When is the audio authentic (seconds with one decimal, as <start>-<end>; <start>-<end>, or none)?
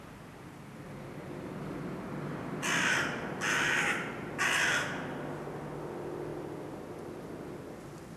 0.0-8.2